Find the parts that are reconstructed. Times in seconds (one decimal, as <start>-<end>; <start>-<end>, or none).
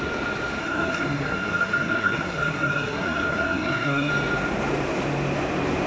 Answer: 0.6-4.1